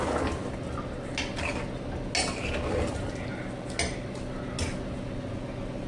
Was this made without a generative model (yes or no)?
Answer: yes